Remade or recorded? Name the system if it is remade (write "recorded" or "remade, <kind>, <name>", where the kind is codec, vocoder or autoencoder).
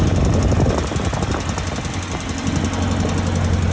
recorded